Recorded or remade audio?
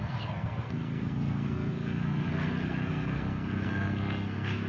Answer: remade